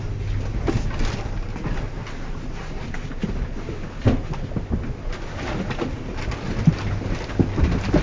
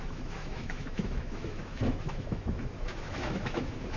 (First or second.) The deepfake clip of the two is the second